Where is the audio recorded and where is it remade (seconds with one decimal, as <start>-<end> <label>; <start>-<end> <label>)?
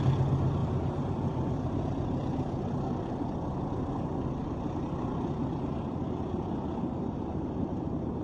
0.0-0.6 recorded; 0.6-2.7 remade; 2.7-4.4 recorded; 4.4-8.2 remade